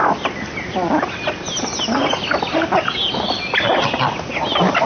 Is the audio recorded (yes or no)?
yes